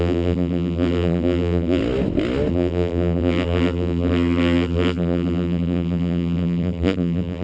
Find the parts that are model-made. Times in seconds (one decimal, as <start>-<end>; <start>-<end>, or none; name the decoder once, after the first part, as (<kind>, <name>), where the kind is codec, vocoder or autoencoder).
0.0-1.8 (vocoder, BigVGAN v2); 2.5-7.4